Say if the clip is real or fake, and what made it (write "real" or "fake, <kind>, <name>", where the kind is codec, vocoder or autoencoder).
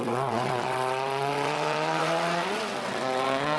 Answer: fake, vocoder, WaveNeXt